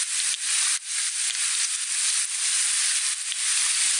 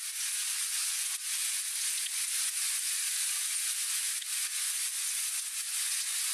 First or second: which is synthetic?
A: second